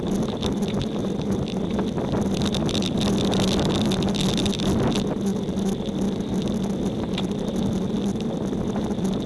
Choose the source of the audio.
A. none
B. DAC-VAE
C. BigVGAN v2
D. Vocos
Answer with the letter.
A